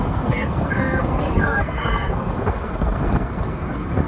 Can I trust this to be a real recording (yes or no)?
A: no